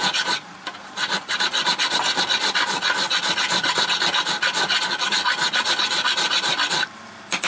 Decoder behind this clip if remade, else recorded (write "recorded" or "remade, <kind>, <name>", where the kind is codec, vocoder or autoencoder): recorded